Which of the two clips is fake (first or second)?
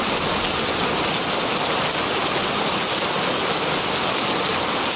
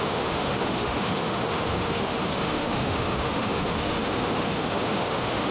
second